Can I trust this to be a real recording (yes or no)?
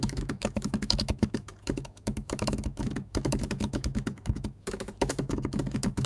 no